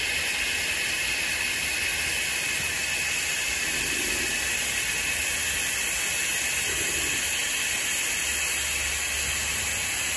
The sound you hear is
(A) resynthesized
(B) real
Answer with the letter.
B